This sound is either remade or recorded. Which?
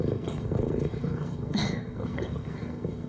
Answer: remade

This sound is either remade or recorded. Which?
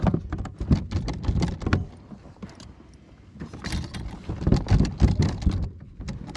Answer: recorded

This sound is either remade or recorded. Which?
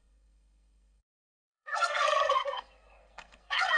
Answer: remade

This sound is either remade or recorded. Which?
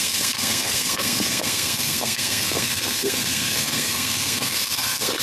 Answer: remade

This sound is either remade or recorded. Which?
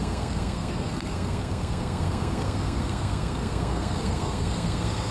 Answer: remade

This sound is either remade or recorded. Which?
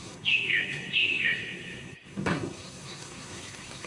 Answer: remade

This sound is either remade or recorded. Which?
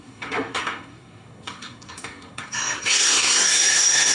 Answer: remade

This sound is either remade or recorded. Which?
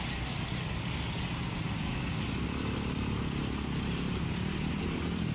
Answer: recorded